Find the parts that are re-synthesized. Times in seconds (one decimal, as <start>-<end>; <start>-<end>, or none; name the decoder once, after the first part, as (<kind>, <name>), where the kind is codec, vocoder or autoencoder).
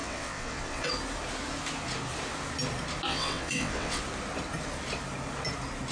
0.0-0.9 (vocoder, WaveNeXt); 3.1-4.0